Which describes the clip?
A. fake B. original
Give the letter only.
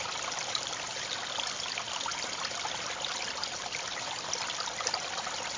B